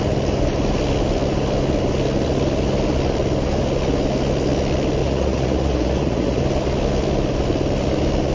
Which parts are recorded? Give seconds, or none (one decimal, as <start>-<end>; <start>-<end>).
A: 0.0-5.0; 6.4-8.3